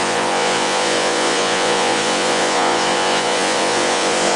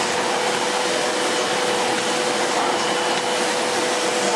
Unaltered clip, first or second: second